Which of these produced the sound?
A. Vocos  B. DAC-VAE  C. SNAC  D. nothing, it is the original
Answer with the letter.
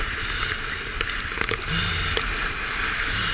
D